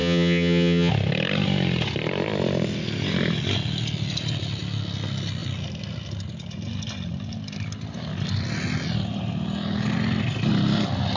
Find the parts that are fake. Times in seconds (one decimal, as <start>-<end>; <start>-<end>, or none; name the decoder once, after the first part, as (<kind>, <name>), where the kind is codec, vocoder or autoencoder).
0.0-0.9 (vocoder, HiFi-GAN)

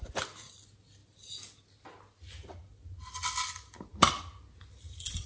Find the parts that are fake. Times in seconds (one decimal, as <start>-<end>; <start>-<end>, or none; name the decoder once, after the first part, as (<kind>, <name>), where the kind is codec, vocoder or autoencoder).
none

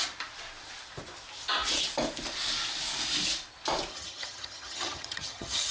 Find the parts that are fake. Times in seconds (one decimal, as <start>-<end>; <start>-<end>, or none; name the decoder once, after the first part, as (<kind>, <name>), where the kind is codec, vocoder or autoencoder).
3.9-5.7 (vocoder, HiFi-GAN)

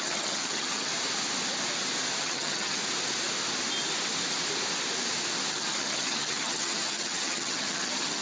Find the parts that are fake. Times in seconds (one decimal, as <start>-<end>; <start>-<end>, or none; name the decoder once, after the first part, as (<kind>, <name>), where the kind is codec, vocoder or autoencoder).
0.0-0.9 (vocoder, HiFi-GAN); 2.2-2.8; 5.5-8.2

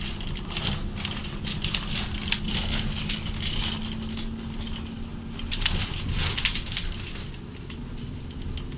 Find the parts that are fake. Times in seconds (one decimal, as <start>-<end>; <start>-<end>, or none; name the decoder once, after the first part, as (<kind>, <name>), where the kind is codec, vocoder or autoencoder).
none

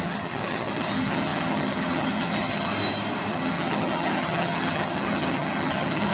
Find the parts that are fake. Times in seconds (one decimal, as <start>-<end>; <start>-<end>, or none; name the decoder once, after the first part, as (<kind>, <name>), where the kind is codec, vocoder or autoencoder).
0.0-2.7 (vocoder, HiFi-GAN); 3.3-6.1

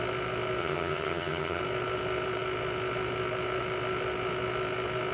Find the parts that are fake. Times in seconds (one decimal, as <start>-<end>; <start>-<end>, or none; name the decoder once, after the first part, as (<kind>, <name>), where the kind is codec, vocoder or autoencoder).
0.6-1.6 (vocoder, HiFi-GAN)